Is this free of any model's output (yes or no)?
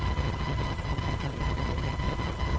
no